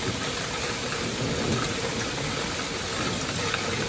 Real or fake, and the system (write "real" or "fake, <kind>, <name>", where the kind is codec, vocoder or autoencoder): real